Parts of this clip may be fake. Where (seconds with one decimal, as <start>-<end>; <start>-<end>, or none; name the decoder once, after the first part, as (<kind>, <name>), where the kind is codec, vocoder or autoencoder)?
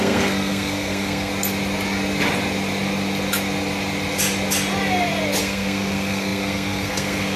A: 0.0-1.3 (codec, SNAC); 5.4-7.4